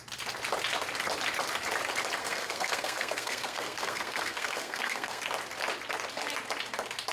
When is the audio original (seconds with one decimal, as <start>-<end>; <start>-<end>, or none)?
0.0-2.2; 5.2-7.1